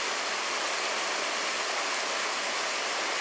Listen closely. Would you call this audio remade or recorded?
recorded